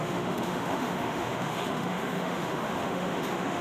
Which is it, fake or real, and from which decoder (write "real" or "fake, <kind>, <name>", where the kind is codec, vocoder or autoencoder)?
fake, autoencoder, DAC-VAE